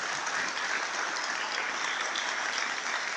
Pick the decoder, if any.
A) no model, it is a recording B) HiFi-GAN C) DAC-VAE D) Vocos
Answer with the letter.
A